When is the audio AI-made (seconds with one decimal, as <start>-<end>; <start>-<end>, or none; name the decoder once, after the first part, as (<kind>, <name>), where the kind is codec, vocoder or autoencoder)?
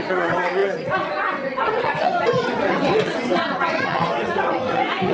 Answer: 0.0-5.1 (vocoder, WaveNeXt)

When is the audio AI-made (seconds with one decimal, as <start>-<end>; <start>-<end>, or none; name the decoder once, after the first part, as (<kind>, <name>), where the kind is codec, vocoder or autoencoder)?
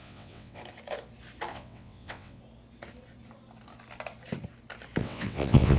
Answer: 0.0-0.6 (vocoder, WaveNeXt); 1.5-2.4; 5.0-5.8